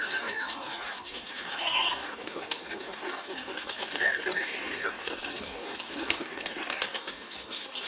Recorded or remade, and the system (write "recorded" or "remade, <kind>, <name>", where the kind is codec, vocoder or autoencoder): remade, codec, DAC